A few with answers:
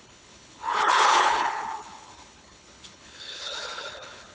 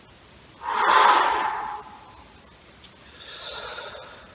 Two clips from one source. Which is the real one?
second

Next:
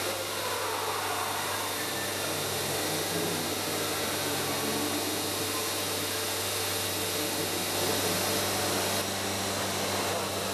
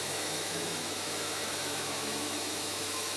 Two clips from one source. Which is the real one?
first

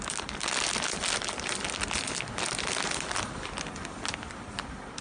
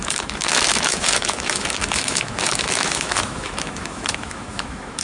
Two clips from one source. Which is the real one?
first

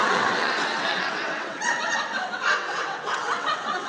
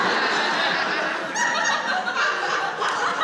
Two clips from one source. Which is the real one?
second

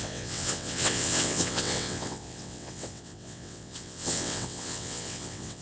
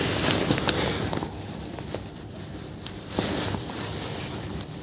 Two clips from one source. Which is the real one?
second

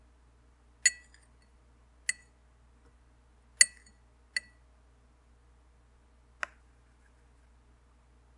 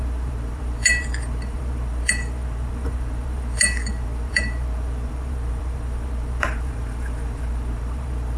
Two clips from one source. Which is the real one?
first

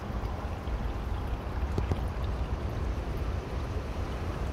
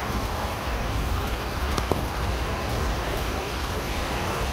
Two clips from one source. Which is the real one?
first